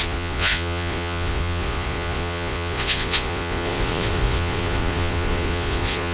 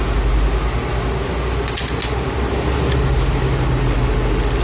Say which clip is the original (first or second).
second